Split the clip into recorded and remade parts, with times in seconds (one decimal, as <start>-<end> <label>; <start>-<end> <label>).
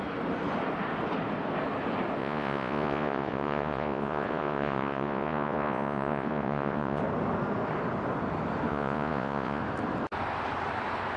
0.0-2.2 recorded; 2.2-7.0 remade; 7.0-8.7 recorded; 8.7-9.6 remade; 9.6-11.2 recorded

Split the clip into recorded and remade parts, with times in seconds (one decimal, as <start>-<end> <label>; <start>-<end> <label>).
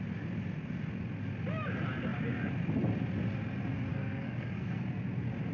0.0-3.9 recorded; 3.9-4.8 remade; 4.8-5.5 recorded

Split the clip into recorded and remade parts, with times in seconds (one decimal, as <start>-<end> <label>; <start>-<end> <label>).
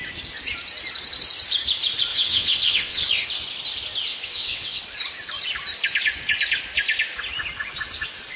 0.0-2.1 recorded; 2.1-3.0 remade; 3.0-4.1 recorded; 4.1-4.8 remade; 4.8-8.4 recorded